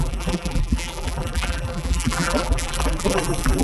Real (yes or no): no